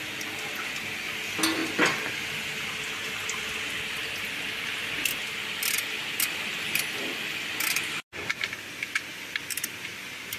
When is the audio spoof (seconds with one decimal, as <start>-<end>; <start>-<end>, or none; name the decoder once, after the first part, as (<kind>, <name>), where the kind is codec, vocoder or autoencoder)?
none